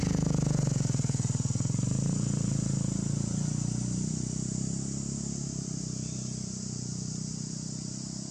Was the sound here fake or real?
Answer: real